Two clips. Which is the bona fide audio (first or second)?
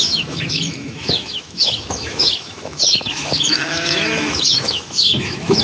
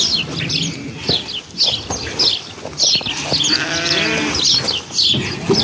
second